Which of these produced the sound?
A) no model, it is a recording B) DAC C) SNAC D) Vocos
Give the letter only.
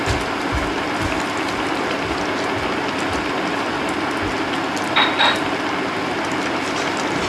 A